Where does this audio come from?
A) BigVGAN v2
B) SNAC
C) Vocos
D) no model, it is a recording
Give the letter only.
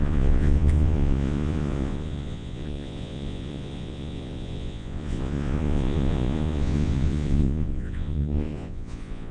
C